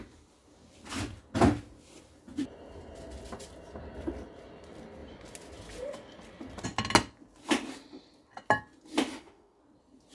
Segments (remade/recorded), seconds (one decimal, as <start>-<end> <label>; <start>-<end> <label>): 0.0-9.1 recorded; 9.1-9.6 remade; 9.6-10.1 recorded